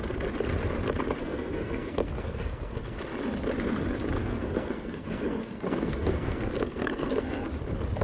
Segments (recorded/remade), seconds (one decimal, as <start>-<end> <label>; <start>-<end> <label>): 0.0-1.2 recorded; 1.2-3.0 remade; 3.0-4.2 recorded; 4.2-7.5 remade; 7.5-8.0 recorded